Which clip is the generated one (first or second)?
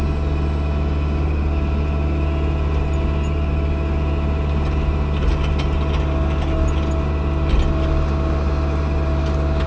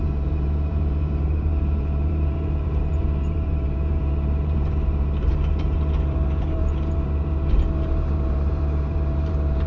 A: second